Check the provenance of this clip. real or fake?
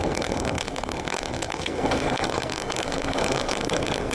fake